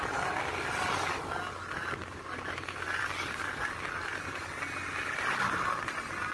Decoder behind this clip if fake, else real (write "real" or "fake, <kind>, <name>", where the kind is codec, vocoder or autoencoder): real